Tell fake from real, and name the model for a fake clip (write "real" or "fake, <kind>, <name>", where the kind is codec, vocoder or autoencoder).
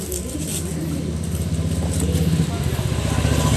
real